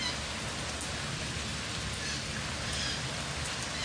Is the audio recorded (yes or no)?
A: yes